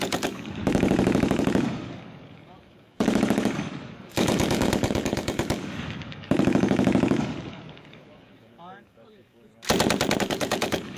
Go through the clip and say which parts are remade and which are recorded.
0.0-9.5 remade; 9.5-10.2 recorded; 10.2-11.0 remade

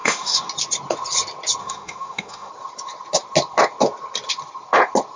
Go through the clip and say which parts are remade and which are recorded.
0.0-0.5 remade; 0.5-1.6 recorded; 1.6-2.5 remade; 2.5-5.2 recorded